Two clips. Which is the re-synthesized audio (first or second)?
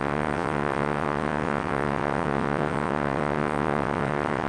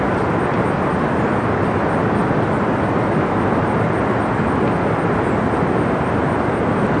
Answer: first